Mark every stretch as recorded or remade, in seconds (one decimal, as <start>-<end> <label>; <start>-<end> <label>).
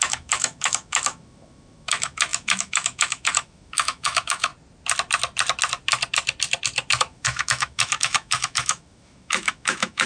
0.0-4.5 remade; 4.5-7.0 recorded; 7.0-10.1 remade